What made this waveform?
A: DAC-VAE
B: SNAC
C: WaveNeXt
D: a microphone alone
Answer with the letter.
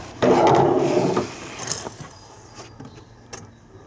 D